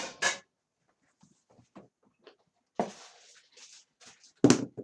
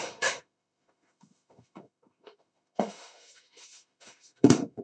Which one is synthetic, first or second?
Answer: second